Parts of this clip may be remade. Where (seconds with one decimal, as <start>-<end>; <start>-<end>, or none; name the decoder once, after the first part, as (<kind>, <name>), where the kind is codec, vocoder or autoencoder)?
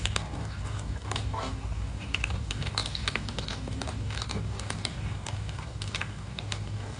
0.0-7.0 (codec, DAC)